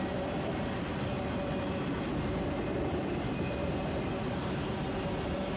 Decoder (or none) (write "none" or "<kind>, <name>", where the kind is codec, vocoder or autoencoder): none